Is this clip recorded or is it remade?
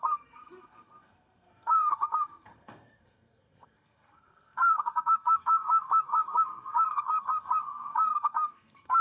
remade